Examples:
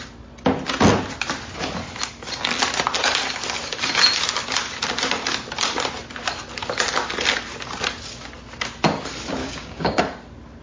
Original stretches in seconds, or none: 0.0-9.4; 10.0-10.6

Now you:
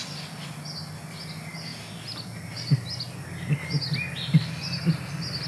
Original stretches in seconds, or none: 0.0-5.5

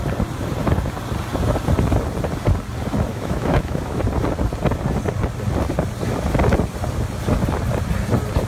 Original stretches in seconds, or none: 0.0-3.1; 4.0-8.5